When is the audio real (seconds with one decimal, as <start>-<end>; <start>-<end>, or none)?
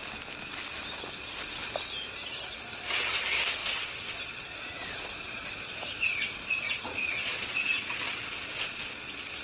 0.0-3.6; 8.9-9.4